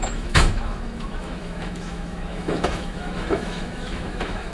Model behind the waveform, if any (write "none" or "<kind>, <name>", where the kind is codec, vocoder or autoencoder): autoencoder, DAC-VAE